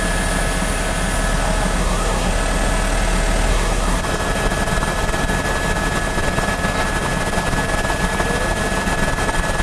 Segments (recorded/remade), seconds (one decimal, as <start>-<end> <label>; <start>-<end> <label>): 0.0-1.8 recorded; 1.8-2.3 remade; 2.3-3.5 recorded; 3.5-4.0 remade; 4.0-9.6 recorded